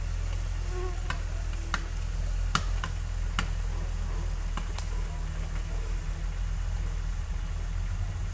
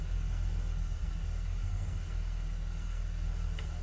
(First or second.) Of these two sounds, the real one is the first